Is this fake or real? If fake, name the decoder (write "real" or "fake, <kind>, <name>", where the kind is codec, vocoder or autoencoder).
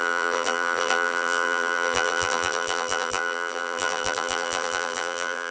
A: fake, vocoder, BigVGAN v2